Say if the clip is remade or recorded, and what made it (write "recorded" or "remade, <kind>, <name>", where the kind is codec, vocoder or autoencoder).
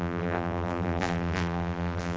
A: remade, vocoder, BigVGAN v2